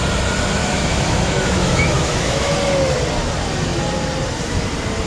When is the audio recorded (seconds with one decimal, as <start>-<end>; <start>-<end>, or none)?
0.0-0.6; 2.5-5.1